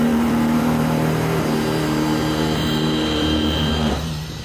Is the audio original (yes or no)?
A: no